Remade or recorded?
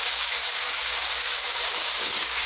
remade